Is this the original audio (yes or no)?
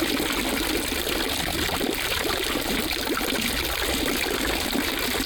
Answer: yes